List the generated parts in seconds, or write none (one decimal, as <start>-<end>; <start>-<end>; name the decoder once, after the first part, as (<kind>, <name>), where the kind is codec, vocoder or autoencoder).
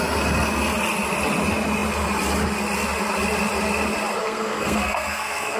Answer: 4.2-5.6 (codec, SNAC)